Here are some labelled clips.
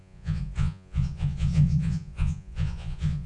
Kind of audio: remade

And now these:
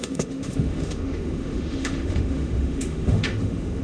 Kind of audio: remade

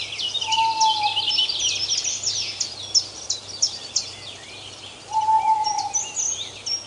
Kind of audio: recorded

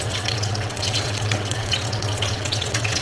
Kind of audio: remade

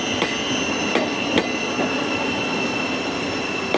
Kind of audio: recorded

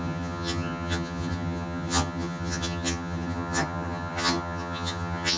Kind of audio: remade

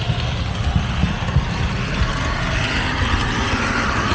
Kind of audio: recorded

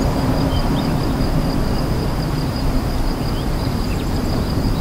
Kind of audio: remade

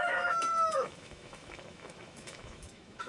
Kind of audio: remade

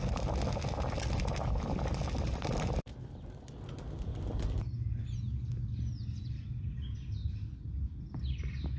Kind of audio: recorded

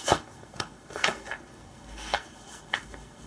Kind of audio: remade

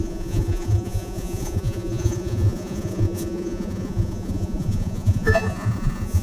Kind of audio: remade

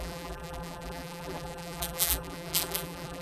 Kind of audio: remade